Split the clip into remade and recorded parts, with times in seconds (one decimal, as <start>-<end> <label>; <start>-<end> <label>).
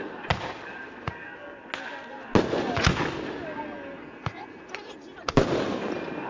0.0-4.0 recorded; 4.0-4.6 remade; 4.6-6.3 recorded